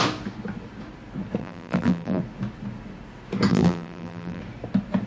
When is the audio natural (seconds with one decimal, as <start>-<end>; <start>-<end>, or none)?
0.0-1.4; 2.2-3.5; 4.4-5.1